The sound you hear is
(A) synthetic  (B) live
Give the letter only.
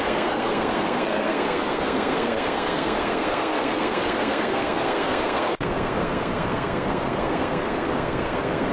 A